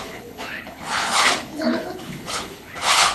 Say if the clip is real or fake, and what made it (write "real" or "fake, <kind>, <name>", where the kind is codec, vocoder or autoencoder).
fake, codec, HILCodec